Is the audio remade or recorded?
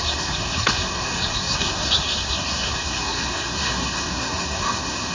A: remade